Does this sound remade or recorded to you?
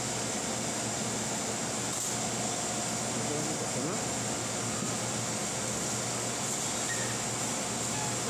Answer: recorded